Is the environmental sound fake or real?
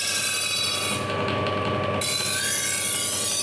real